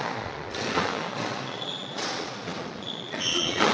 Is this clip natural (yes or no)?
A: no